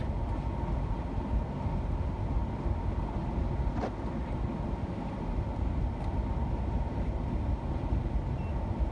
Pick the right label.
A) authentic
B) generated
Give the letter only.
A